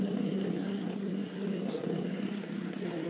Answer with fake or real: fake